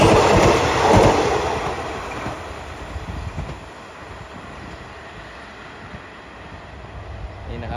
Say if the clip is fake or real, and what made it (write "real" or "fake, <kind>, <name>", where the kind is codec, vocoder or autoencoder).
real